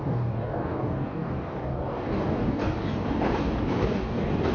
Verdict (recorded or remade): remade